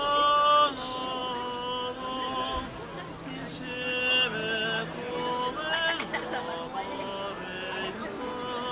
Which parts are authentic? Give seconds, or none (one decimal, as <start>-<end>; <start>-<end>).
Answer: 0.0-8.7

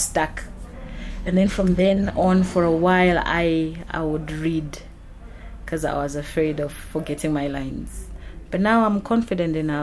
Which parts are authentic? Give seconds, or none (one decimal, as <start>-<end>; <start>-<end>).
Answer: 0.0-1.1; 2.1-9.8

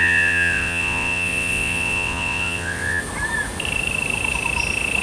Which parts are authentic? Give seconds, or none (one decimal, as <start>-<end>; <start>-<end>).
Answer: 3.0-5.0